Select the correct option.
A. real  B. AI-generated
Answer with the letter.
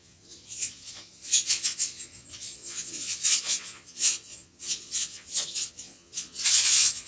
B